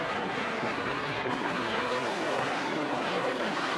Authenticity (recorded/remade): remade